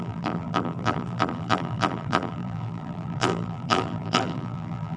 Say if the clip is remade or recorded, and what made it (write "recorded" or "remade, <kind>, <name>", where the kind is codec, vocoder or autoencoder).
remade, vocoder, BigVGAN v2